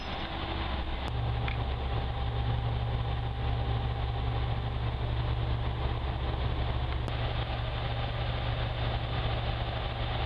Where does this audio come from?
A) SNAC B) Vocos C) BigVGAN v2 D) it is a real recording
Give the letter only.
D